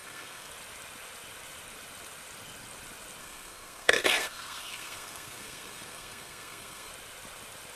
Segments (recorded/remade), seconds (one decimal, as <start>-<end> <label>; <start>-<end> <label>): 0.0-0.5 remade; 0.5-3.2 recorded; 3.2-6.9 remade; 6.9-7.8 recorded